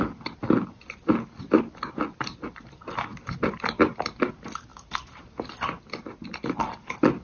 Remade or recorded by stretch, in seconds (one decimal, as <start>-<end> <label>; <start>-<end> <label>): 0.0-7.2 recorded